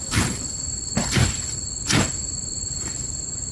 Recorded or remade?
remade